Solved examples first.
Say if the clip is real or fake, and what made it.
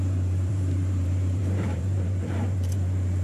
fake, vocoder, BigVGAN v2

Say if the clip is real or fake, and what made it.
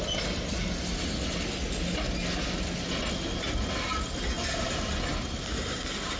real